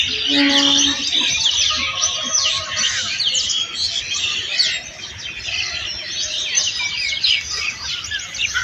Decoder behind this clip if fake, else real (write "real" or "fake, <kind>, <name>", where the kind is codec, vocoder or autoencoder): real